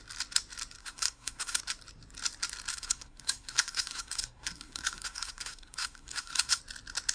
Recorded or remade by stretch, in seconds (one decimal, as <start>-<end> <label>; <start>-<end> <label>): 0.0-0.8 recorded; 0.8-1.6 remade; 1.6-2.7 recorded; 2.7-6.6 remade; 6.6-7.1 recorded